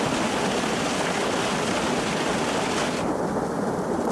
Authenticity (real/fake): real